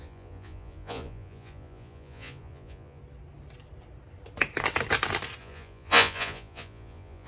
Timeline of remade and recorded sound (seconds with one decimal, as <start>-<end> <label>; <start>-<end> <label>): 0.0-3.0 remade; 3.0-5.4 recorded; 5.4-7.3 remade